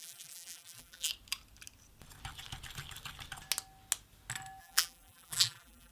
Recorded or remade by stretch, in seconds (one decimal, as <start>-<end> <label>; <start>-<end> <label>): 0.0-1.1 remade; 1.1-4.6 recorded; 4.6-5.9 remade

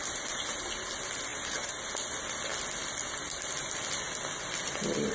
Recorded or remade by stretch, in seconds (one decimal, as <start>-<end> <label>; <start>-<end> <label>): 0.0-0.7 remade; 0.7-1.3 recorded; 1.3-1.8 remade; 1.8-5.1 recorded

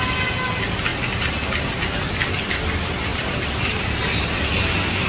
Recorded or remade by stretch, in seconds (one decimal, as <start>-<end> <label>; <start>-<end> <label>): 0.0-3.1 recorded; 3.1-3.9 remade; 3.9-5.1 recorded

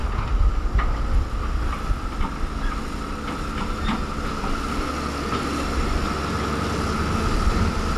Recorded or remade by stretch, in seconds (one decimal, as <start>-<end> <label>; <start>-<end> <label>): 0.0-8.0 recorded

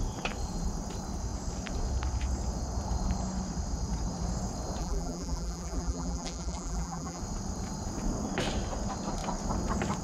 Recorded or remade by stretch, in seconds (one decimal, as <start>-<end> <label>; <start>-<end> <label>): 0.0-4.8 recorded; 4.8-7.2 remade; 7.2-10.0 recorded